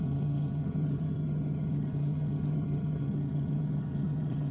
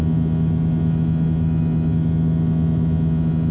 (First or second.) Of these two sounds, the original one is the second